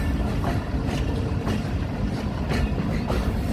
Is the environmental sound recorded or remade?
recorded